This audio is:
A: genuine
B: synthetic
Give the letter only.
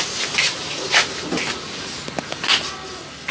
A